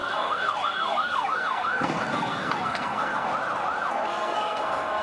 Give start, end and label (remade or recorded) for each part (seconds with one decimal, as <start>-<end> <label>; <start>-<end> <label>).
0.0-3.3 remade; 3.3-3.9 recorded; 3.9-5.0 remade